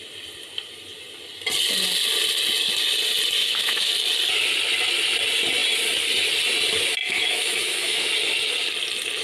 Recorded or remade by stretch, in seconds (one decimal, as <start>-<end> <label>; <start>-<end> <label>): 0.0-3.4 recorded; 3.4-3.9 remade; 3.9-7.0 recorded; 7.0-8.1 remade; 8.1-9.2 recorded